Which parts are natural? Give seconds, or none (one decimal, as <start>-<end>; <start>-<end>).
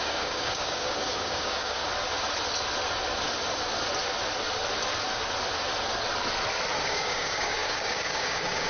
1.8-6.8